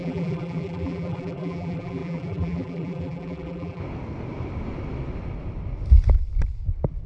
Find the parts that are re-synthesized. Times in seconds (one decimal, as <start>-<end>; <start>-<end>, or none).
0.0-3.8